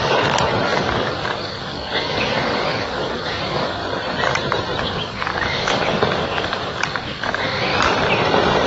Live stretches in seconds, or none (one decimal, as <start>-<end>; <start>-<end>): 3.8-4.8; 7.7-8.7